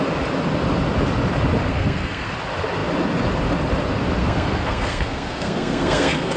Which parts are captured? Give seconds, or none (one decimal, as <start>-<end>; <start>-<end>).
0.0-1.7; 2.3-4.2